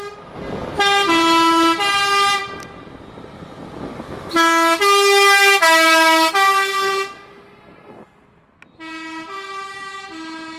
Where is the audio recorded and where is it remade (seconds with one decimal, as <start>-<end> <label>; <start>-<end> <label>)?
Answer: 0.0-10.6 recorded

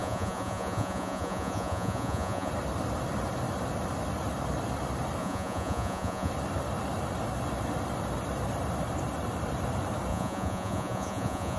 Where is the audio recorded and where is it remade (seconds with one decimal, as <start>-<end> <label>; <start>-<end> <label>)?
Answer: 0.0-2.5 remade; 2.5-5.2 recorded; 5.2-6.3 remade; 6.3-10.1 recorded; 10.1-11.6 remade

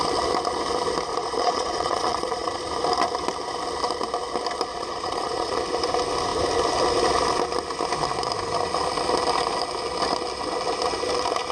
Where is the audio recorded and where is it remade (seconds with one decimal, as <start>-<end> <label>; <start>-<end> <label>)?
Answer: 0.0-1.1 recorded; 1.1-2.7 remade; 2.7-4.7 recorded; 4.7-5.6 remade; 5.6-11.5 recorded

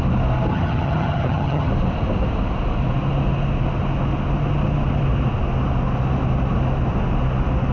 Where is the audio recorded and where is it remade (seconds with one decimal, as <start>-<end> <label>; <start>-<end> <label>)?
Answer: 0.0-0.5 recorded; 0.5-1.7 remade; 1.7-7.7 recorded

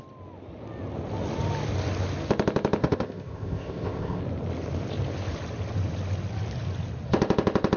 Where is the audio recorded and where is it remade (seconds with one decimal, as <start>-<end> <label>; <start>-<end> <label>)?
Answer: 0.0-2.8 recorded; 2.8-4.2 remade; 4.2-7.8 recorded

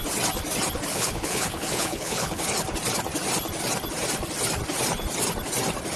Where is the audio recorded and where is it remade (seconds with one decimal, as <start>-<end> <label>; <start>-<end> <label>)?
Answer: 0.0-0.9 recorded; 0.9-2.4 remade; 2.4-6.0 recorded